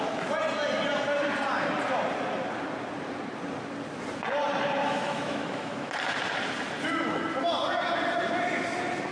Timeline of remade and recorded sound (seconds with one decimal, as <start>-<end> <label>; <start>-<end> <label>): 0.0-4.8 recorded; 4.8-5.9 remade; 5.9-9.1 recorded

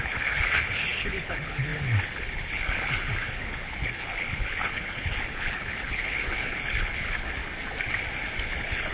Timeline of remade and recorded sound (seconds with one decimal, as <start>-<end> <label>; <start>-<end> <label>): 0.0-7.4 remade; 7.4-8.4 recorded; 8.4-8.9 remade

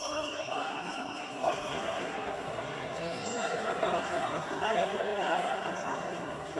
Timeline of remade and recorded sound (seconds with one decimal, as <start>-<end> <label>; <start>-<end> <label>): 0.0-6.6 remade

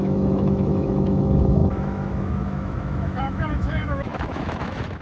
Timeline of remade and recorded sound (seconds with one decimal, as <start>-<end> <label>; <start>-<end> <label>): 0.0-5.0 remade

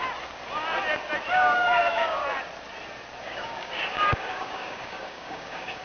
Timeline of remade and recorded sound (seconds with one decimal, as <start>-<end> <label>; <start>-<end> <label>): 0.0-1.3 recorded; 1.3-2.2 remade; 2.2-3.2 recorded; 3.2-5.8 remade

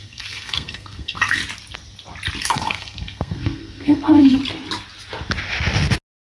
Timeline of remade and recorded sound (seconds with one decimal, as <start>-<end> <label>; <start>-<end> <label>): 0.0-1.4 remade; 1.4-2.4 recorded; 2.4-4.4 remade; 4.4-6.4 recorded

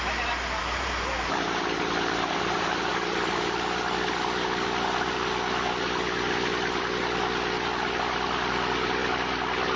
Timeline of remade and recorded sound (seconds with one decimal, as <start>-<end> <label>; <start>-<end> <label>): 0.0-0.6 recorded; 0.6-2.9 remade; 2.9-9.8 recorded